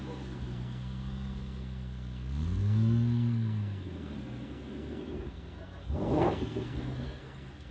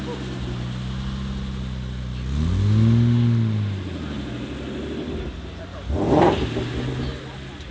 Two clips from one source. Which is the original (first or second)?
second